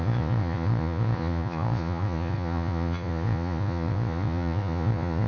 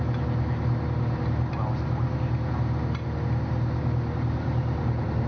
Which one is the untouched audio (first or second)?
second